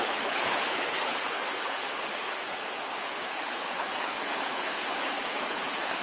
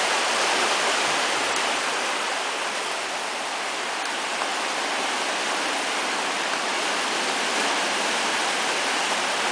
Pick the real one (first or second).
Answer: second